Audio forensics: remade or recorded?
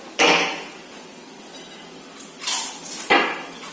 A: recorded